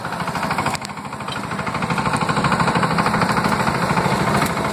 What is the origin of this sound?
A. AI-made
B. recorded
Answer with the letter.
A